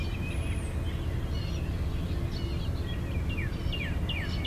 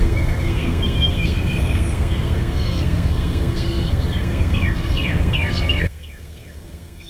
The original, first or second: first